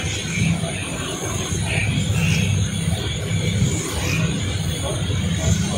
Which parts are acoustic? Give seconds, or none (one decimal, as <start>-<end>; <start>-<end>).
0.0-0.8; 1.3-5.8